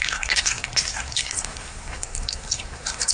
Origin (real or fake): fake